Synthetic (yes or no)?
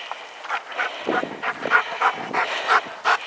no